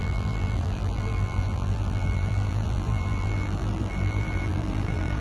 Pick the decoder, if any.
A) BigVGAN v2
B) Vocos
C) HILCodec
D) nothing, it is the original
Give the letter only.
A